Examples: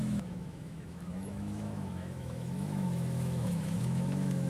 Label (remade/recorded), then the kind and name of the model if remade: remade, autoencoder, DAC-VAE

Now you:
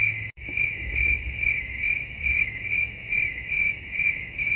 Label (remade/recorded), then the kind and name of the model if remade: remade, autoencoder, DAC-VAE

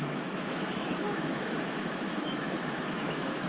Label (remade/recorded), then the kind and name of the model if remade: remade, autoencoder, DAC-VAE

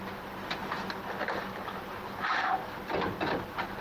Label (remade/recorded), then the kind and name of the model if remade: recorded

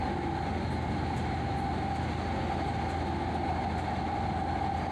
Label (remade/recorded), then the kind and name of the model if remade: recorded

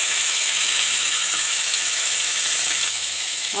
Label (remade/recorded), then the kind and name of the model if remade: remade, autoencoder, DAC-VAE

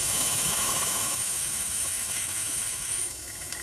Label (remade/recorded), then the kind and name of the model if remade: remade, autoencoder, DAC-VAE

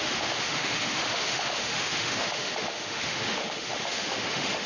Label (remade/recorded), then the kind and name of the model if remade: remade, autoencoder, DAC-VAE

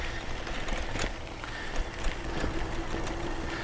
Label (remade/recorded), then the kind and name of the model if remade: recorded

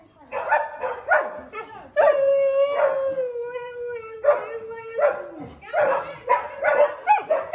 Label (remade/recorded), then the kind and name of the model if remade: recorded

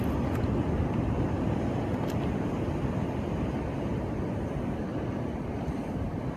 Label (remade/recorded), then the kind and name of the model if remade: recorded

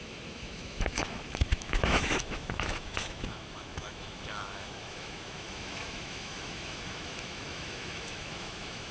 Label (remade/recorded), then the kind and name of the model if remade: remade, autoencoder, DAC-VAE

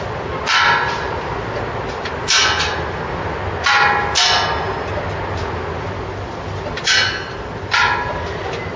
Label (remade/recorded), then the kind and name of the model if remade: recorded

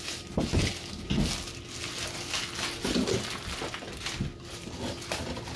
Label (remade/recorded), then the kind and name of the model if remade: recorded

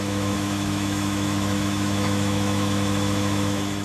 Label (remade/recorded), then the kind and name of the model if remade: remade, autoencoder, DAC-VAE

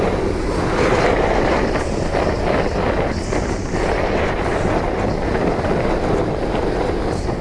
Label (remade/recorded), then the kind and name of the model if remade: recorded